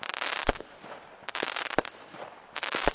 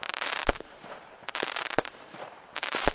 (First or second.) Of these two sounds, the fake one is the second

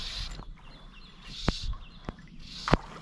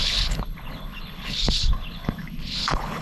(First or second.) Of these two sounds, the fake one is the second